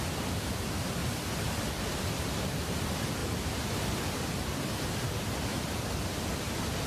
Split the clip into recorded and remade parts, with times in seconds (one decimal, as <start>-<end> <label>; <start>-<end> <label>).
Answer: 0.0-1.0 recorded; 1.0-1.5 remade; 1.5-3.2 recorded; 3.2-4.1 remade; 4.1-5.5 recorded; 5.5-6.9 remade